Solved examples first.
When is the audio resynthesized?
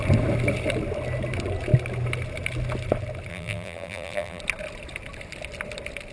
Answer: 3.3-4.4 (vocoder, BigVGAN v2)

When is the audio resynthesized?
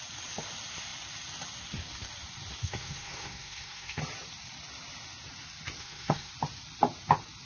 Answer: 2.6-4.0 (codec, SNAC); 5.8-6.3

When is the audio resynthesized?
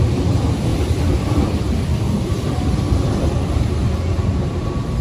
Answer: 0.7-3.7 (vocoder, BigVGAN v2)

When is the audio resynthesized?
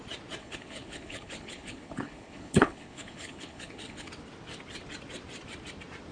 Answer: 0.4-4.1 (codec, HILCodec)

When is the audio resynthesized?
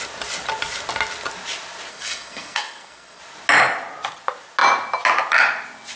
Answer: 1.9-3.2 (codec, SNAC)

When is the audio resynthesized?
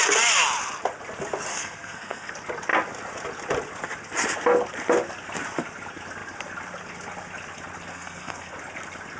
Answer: 1.5-2.3 (codec, SNAC); 7.9-8.5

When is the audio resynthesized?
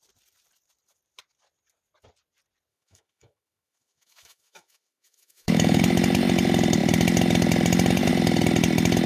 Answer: 2.7-5.8 (autoencoder, DAC-VAE)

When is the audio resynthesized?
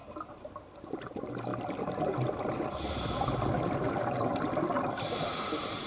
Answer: 0.0-1.5 (vocoder, BigVGAN v2); 5.0-5.9